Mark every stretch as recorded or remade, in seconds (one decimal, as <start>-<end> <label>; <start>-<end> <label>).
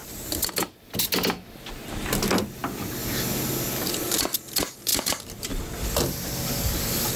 0.0-7.2 recorded